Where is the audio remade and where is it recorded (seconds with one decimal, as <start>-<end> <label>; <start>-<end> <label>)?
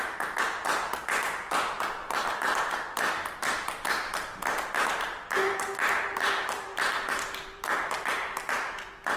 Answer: 0.0-2.0 recorded; 2.0-2.8 remade; 2.8-5.4 recorded; 5.4-7.7 remade; 7.7-9.2 recorded